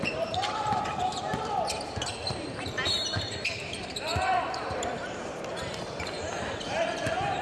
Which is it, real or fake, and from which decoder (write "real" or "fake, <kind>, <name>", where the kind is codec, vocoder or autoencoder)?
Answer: fake, vocoder, BigVGAN v2